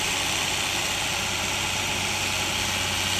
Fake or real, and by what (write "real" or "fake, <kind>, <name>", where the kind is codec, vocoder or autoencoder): real